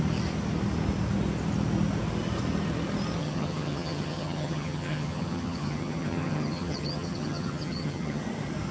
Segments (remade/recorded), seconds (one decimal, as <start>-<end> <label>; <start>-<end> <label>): 0.0-3.2 recorded; 3.2-8.2 remade; 8.2-8.7 recorded